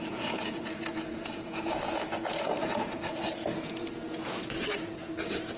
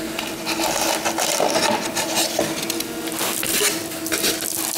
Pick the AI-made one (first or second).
first